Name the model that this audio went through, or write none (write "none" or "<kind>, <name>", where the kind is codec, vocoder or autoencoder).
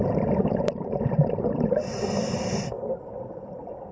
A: none